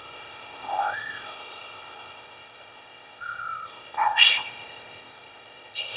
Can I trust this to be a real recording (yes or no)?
no